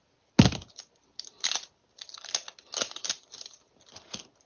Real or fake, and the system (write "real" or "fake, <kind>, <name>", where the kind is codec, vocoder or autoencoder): real